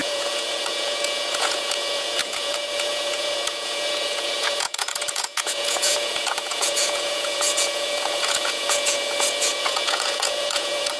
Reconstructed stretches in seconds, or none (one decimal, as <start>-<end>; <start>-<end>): 0.0-11.0